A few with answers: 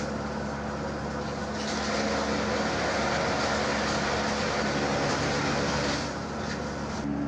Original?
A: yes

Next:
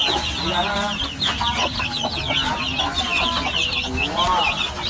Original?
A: yes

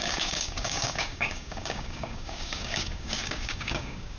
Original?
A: no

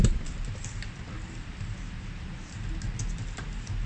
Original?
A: yes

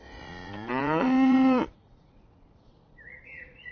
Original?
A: no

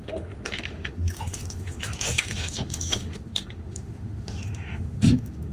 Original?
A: no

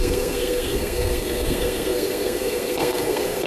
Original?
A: no